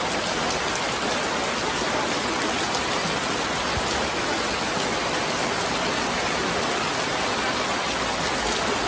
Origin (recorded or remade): recorded